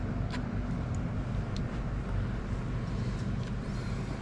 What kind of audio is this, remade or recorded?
recorded